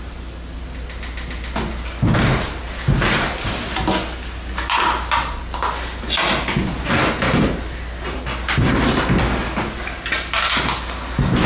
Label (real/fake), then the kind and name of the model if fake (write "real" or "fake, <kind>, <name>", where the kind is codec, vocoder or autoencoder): real